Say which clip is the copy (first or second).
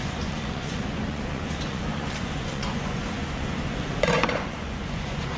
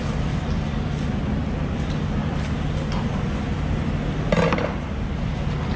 first